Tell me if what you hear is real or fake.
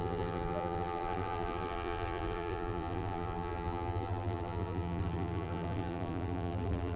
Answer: fake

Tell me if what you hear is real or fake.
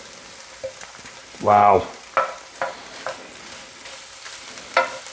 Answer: real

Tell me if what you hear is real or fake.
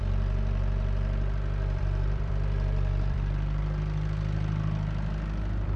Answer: fake